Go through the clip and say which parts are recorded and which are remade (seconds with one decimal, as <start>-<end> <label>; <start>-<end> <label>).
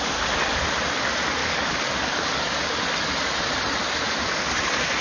0.0-1.4 recorded; 1.4-2.8 remade; 2.8-5.0 recorded